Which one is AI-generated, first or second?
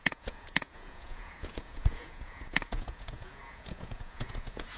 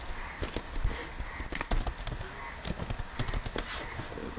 first